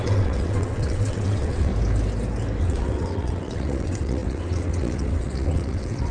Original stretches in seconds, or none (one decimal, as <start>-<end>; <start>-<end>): 1.7-2.6